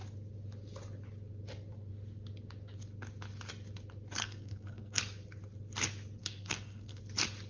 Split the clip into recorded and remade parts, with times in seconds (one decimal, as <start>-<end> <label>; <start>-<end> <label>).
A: 0.0-4.2 recorded; 4.2-5.0 remade; 5.0-6.2 recorded; 6.2-7.0 remade; 7.0-7.5 recorded